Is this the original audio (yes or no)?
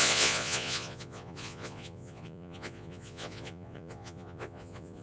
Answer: no